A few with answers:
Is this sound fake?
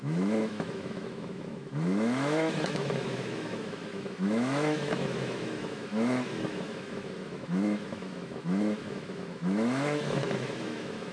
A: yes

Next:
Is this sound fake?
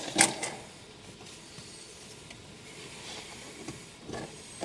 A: no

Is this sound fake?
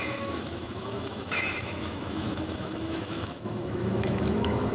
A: yes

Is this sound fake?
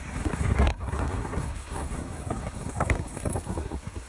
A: yes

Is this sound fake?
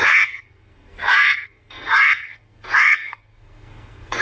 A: yes